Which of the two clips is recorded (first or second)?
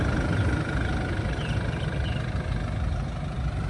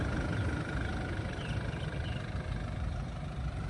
first